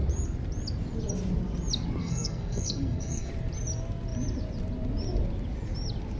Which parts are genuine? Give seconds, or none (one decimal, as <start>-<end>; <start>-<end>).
0.0-2.0; 3.3-6.2